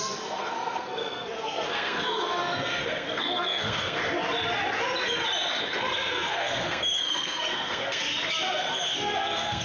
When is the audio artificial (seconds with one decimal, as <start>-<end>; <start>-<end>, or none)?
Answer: 0.0-4.0; 5.6-8.0; 8.5-9.6